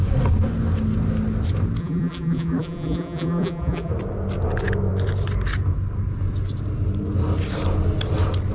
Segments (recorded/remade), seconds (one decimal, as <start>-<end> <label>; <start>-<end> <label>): 0.0-1.8 recorded; 1.8-3.9 remade; 3.9-8.5 recorded